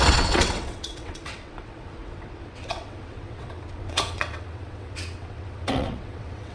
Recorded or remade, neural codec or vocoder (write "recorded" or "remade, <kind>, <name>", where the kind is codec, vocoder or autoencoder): remade, vocoder, WaveNeXt